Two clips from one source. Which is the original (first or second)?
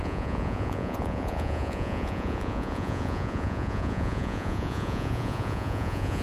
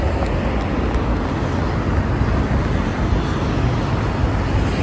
second